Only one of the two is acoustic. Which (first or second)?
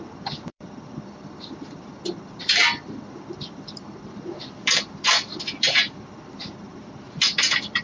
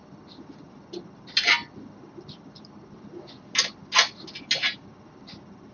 second